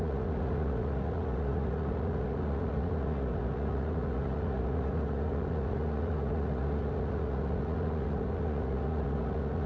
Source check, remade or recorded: remade